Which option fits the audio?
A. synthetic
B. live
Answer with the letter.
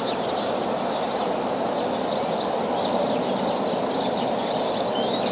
B